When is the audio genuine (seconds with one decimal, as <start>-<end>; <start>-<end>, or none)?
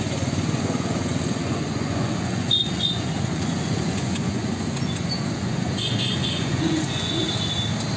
7.2-8.0